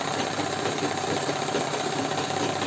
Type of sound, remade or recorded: recorded